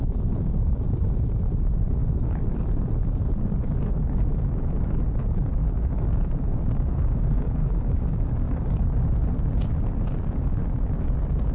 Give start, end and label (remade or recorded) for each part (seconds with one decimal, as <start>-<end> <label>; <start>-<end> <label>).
0.0-5.6 recorded; 5.6-8.7 remade; 8.7-11.5 recorded

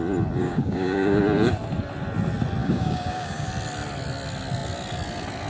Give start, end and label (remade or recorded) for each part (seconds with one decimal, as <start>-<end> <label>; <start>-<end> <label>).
0.0-0.4 recorded; 0.4-1.2 remade; 1.2-2.6 recorded; 2.6-3.5 remade; 3.5-5.5 recorded

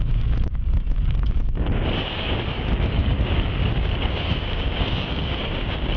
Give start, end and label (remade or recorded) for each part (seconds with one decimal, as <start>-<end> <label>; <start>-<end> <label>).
0.0-6.0 remade